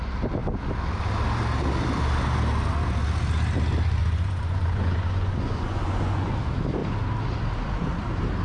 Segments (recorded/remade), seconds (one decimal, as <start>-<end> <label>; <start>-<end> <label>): 0.0-4.0 recorded; 4.0-6.3 remade; 6.3-8.4 recorded